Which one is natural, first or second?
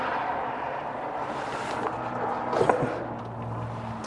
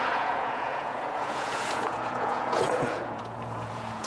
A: first